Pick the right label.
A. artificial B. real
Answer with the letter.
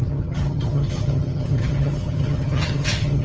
A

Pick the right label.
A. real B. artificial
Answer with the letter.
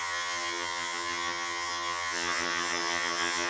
B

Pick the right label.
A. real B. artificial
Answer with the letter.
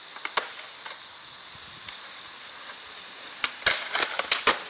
A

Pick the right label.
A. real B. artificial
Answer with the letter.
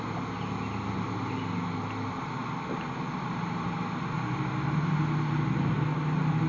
A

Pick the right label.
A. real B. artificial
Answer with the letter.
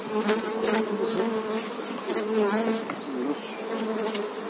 A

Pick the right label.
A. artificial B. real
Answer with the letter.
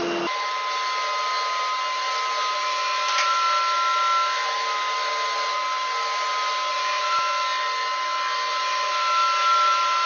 B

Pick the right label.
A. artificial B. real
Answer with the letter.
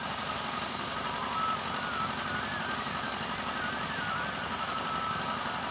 B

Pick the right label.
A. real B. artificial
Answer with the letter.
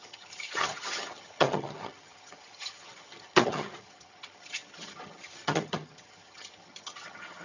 B